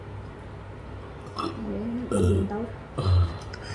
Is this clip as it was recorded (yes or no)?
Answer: yes